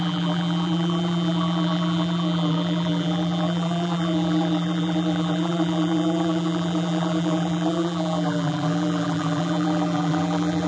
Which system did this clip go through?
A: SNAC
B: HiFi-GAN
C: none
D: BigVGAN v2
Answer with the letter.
D